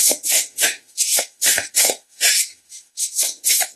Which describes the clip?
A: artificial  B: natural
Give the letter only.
A